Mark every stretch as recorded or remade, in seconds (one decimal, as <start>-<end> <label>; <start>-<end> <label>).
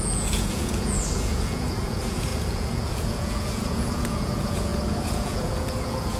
0.0-6.2 remade